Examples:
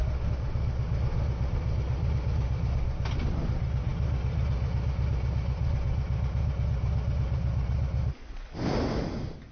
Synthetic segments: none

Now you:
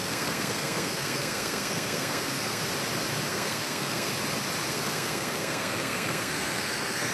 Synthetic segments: 0.0-2.6; 3.3-4.1; 4.7-7.1

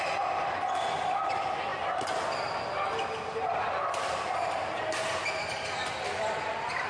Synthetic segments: none

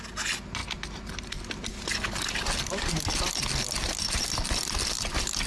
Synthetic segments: none

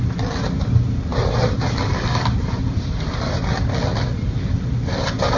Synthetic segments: none